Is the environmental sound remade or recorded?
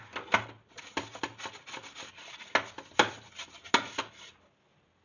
recorded